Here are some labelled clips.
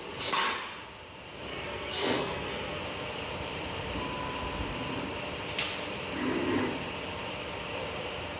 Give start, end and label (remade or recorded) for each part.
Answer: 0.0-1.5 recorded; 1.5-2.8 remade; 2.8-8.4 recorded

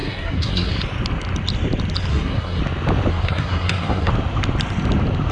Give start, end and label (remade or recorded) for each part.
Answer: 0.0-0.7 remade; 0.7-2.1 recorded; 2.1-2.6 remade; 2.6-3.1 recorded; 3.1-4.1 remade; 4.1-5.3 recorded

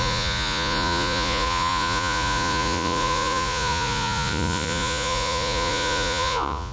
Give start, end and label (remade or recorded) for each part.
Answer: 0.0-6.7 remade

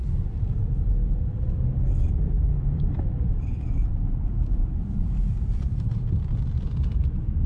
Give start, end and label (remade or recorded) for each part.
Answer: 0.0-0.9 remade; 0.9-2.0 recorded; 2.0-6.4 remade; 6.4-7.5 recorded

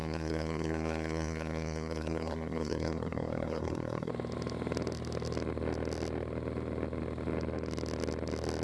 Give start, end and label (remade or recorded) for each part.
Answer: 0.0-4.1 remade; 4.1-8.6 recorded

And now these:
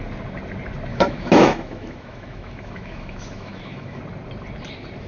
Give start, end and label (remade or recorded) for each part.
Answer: 0.0-0.9 recorded; 0.9-4.0 remade; 4.0-5.1 recorded

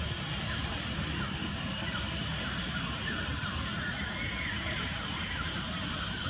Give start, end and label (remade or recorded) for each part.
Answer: 0.0-3.7 remade; 3.7-4.5 recorded; 4.5-6.3 remade